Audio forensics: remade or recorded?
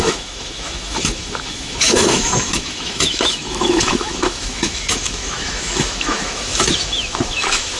remade